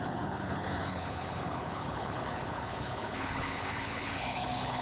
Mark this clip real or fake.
fake